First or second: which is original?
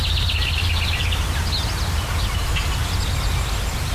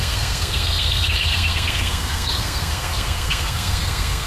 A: first